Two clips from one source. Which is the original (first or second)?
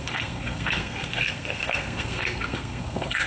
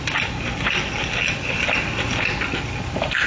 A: second